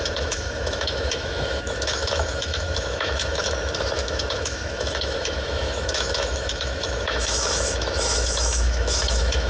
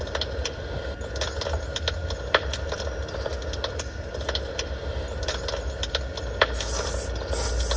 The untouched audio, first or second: second